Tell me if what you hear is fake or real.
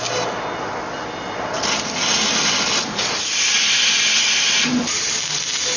real